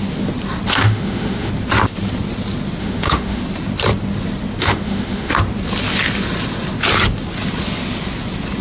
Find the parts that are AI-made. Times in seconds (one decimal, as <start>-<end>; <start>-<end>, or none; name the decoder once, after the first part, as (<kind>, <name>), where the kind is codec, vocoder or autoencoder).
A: 0.7-1.5 (autoencoder, DAC-VAE); 2.8-3.4; 4.6-5.3